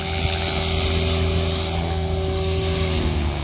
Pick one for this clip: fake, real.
real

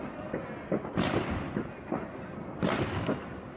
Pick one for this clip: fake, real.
real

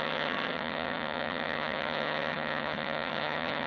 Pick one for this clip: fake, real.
fake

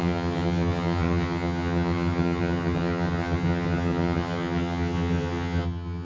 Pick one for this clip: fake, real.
fake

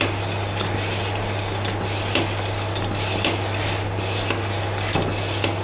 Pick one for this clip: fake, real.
real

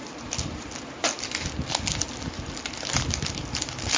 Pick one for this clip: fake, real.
real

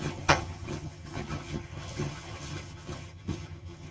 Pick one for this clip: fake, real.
fake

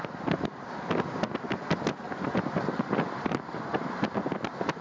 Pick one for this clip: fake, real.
real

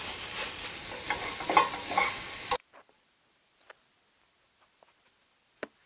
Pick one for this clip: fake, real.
real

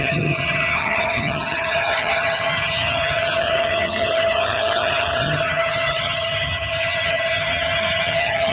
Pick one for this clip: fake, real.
fake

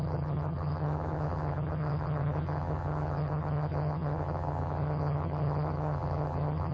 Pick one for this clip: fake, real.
fake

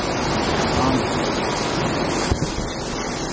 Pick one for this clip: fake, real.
real